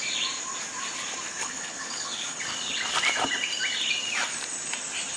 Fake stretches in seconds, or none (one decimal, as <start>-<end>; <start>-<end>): 1.4-2.4